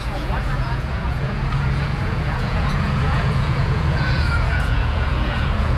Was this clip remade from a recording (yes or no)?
yes